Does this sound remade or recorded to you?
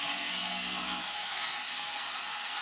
remade